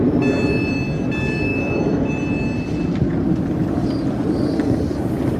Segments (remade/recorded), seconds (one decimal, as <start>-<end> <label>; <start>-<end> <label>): 0.0-1.5 recorded; 1.5-2.1 remade; 2.1-5.4 recorded

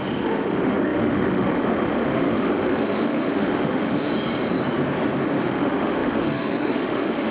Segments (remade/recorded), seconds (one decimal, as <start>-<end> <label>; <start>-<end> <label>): 0.0-4.1 remade; 4.1-5.4 recorded; 5.4-7.3 remade

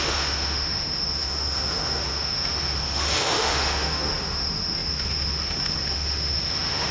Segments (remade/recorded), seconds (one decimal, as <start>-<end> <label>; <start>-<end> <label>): 0.0-6.9 remade

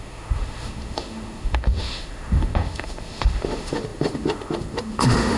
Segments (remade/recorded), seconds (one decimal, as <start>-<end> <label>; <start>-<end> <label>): 0.0-5.4 remade

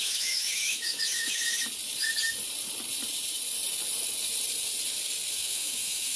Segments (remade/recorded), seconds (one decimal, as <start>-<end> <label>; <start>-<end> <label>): 0.0-1.6 remade; 1.6-5.3 recorded; 5.3-6.2 remade

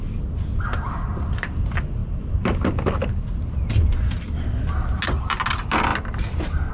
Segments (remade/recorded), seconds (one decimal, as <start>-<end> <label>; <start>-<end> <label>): 0.0-6.7 recorded

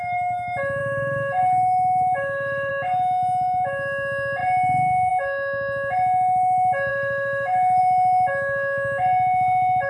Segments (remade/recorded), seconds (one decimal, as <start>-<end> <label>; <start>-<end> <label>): 0.0-0.8 recorded; 0.8-2.7 remade; 2.7-6.9 recorded; 6.9-7.8 remade; 7.8-9.9 recorded

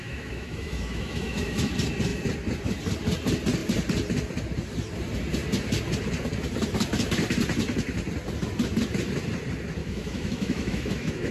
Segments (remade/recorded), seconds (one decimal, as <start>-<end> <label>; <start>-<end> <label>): 0.0-1.7 remade; 1.7-9.8 recorded; 9.8-11.3 remade